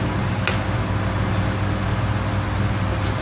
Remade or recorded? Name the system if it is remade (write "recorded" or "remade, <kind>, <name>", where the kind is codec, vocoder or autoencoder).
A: recorded